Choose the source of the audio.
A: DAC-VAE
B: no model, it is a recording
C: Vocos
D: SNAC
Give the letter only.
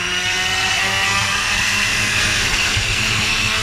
D